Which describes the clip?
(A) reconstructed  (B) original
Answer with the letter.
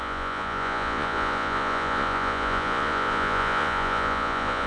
A